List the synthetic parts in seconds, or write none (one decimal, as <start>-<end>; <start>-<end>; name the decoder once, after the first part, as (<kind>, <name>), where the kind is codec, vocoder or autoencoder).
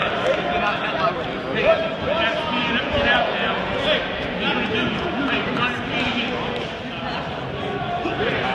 2.6-3.8 (vocoder, Vocos); 4.5-5.2